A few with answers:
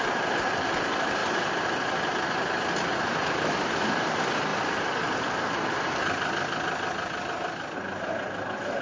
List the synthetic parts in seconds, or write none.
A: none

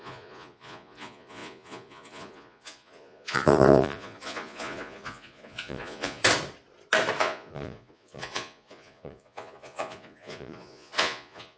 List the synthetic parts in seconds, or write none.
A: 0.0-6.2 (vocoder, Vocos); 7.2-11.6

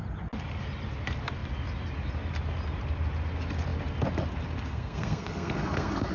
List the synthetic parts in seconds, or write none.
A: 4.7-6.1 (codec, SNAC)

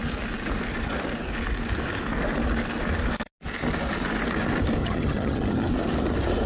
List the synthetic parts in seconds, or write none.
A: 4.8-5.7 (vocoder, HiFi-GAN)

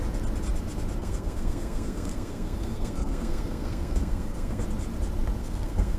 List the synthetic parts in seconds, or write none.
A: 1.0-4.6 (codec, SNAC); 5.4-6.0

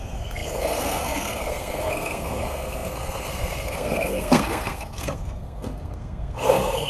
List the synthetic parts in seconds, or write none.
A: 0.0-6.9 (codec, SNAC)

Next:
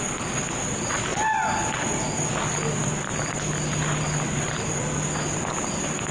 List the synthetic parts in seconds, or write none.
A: none